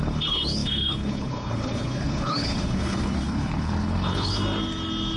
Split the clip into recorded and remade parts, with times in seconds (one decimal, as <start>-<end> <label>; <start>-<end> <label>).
0.0-4.4 remade; 4.4-5.2 recorded